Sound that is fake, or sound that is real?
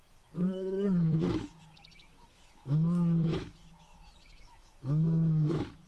fake